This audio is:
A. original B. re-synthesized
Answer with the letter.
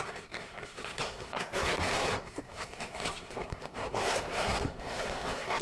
B